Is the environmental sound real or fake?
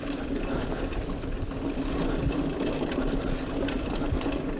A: real